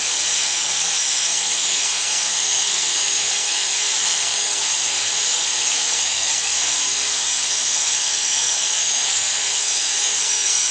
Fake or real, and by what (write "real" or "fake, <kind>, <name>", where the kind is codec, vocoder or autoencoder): fake, codec, SNAC